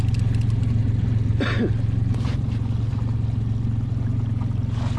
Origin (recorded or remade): recorded